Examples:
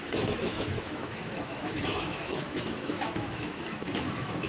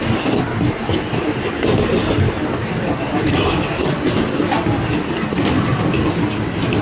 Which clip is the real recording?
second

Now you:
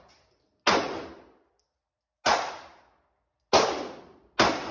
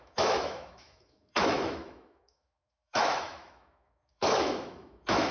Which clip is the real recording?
first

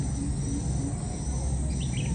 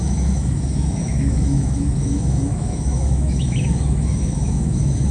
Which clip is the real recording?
first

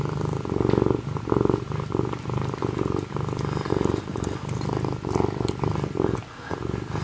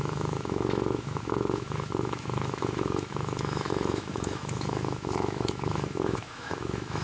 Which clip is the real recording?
first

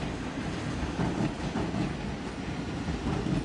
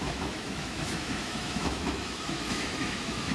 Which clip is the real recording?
first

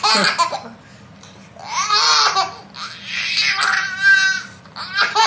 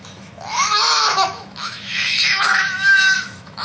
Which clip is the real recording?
first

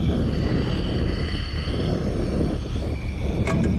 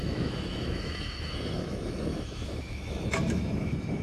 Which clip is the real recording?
first